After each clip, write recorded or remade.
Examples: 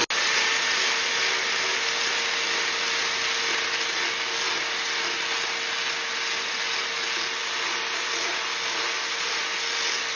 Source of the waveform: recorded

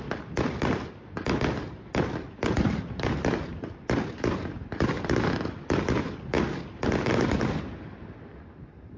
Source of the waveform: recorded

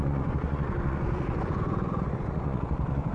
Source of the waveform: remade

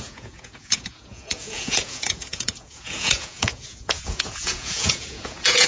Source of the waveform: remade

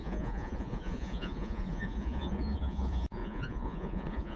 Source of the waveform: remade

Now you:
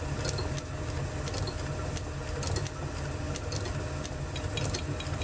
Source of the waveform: recorded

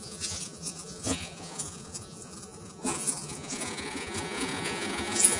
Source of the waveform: remade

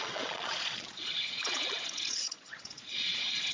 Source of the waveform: remade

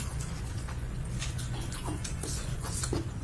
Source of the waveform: remade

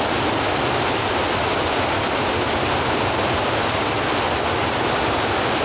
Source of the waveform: recorded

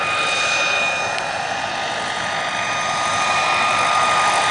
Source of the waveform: recorded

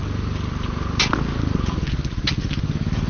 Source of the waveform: recorded